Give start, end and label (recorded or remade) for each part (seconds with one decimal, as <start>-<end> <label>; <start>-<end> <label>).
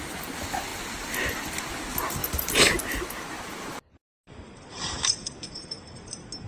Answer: 0.0-2.2 recorded; 2.2-6.1 remade; 6.1-6.5 recorded